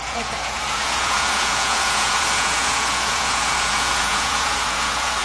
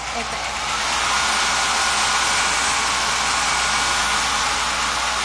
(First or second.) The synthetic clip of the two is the first